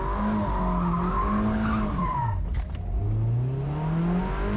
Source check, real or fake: real